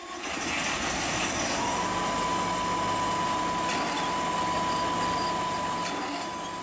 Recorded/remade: recorded